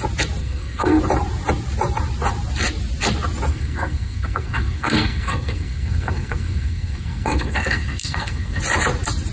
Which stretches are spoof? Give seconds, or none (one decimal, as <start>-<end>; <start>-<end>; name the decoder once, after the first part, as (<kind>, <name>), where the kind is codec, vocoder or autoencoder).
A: 0.4-1.0 (codec, SNAC); 3.5-8.6